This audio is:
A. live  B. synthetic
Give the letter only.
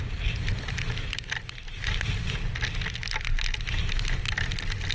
A